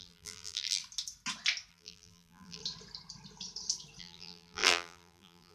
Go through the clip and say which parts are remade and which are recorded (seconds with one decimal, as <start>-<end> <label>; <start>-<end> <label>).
0.0-0.8 remade; 0.8-1.7 recorded; 1.7-2.6 remade; 2.6-4.0 recorded; 4.0-5.5 remade